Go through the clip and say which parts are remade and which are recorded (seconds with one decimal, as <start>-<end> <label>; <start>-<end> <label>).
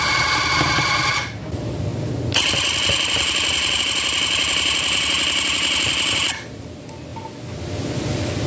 0.0-8.5 recorded